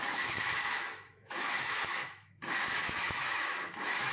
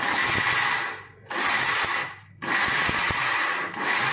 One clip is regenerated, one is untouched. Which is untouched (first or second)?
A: second